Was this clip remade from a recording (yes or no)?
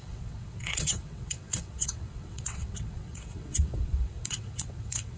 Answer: yes